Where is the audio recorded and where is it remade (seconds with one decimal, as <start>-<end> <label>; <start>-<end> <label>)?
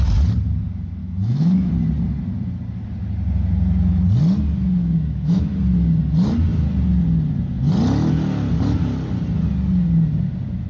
0.0-1.0 recorded; 1.0-1.7 remade; 1.7-4.8 recorded; 4.8-5.6 remade; 5.6-10.7 recorded